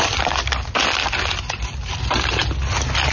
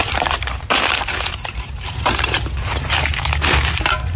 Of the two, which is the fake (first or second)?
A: second